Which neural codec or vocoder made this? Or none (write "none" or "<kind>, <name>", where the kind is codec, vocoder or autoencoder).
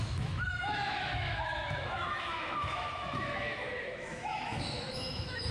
autoencoder, DAC-VAE